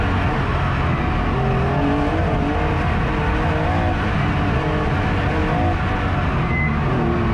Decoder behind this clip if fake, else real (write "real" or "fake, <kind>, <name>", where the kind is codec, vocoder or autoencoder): real